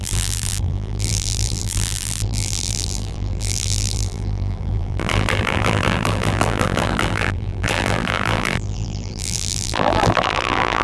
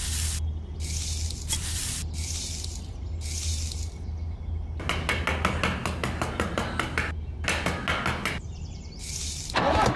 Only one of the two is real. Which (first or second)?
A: second